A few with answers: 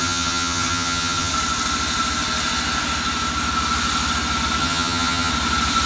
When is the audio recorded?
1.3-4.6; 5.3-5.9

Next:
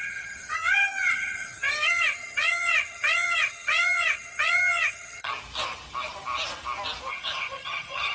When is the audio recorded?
5.3-7.1

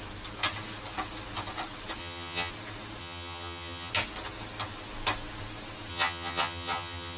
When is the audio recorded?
0.0-2.0; 2.5-3.0; 3.9-5.9